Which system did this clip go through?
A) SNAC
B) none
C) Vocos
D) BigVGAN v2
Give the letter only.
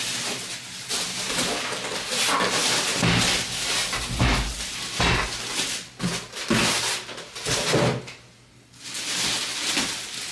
B